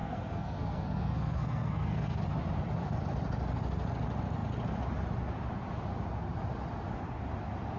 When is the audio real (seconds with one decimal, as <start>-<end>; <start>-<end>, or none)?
2.2-7.8